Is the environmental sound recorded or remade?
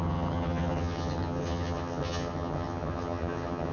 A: remade